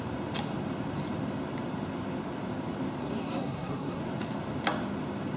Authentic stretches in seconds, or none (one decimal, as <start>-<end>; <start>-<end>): 0.0-3.0; 4.0-5.4